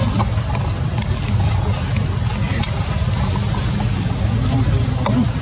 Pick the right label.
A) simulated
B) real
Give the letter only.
B